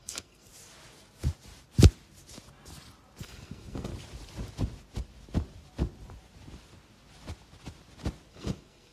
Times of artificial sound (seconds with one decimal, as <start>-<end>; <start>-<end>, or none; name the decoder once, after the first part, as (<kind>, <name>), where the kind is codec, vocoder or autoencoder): 0.0-0.5 (codec, SNAC); 3.2-3.9; 8.3-8.9